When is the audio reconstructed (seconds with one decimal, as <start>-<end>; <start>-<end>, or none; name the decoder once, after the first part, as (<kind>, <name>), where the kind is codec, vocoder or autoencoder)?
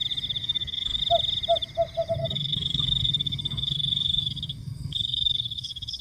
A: 0.4-1.0 (codec, SNAC); 2.2-6.0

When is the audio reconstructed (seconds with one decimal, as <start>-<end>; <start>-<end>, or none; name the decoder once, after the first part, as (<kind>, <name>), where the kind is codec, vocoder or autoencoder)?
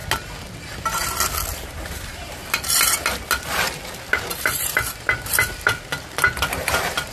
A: 1.6-2.4 (vocoder, BigVGAN v2)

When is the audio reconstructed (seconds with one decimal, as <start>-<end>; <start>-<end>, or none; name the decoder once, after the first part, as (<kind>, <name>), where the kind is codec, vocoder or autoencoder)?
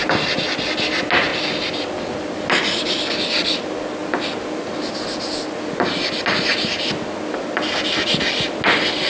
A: none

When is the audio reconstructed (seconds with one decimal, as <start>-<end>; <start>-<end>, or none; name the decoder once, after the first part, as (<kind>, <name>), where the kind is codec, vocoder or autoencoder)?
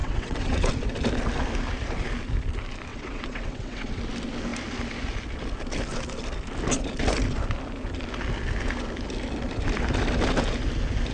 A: 0.0-0.7 (vocoder, WaveNeXt); 2.9-4.0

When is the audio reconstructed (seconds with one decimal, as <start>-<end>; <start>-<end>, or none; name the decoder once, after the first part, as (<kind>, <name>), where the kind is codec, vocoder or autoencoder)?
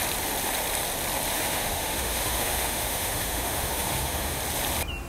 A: 1.3-4.4 (autoencoder, DAC-VAE)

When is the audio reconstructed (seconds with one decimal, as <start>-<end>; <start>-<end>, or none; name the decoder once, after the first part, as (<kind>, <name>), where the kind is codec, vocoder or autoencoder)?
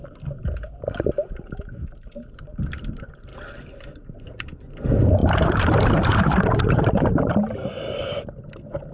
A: 5.2-8.5 (vocoder, BigVGAN v2)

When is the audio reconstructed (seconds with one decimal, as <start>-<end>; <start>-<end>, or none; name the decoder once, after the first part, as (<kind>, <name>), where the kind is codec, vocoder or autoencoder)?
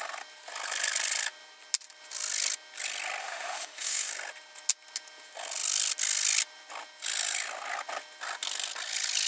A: 3.2-4.1 (autoencoder, DAC-VAE)